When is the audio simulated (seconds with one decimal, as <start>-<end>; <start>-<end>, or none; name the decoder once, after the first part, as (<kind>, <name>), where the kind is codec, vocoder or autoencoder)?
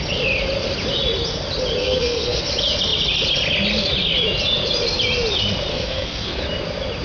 1.8-2.4 (codec, SNAC); 5.7-6.4